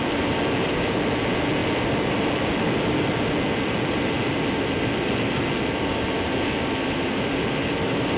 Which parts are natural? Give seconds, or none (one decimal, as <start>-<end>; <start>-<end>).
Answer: 0.0-1.6; 6.2-8.2